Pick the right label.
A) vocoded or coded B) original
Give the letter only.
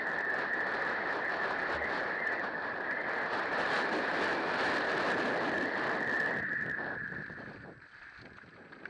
B